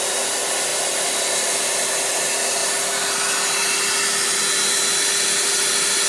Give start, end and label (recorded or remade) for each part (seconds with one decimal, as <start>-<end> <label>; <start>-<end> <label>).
0.0-6.1 recorded